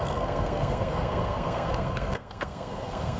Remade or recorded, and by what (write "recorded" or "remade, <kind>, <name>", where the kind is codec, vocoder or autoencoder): remade, codec, SNAC